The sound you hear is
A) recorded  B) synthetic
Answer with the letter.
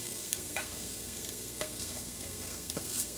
B